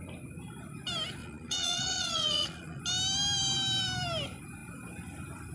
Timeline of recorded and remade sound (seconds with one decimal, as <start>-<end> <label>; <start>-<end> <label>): 0.0-1.2 recorded; 1.2-2.8 remade; 2.8-5.5 recorded